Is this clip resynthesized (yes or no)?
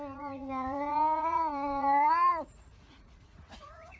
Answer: yes